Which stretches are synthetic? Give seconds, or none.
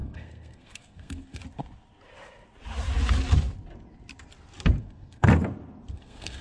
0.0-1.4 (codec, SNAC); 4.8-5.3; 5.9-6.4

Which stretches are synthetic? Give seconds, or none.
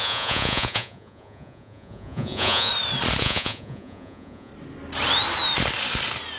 0.0-2.7 (vocoder, Vocos); 3.2-4.5